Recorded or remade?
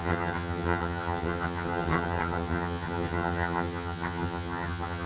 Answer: remade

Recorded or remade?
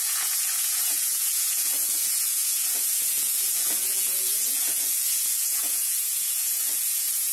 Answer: remade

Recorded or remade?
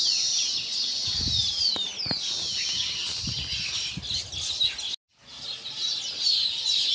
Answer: recorded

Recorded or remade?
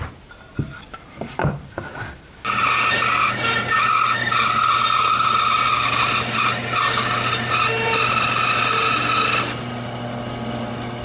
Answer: recorded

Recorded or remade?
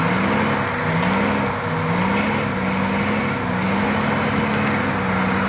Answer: recorded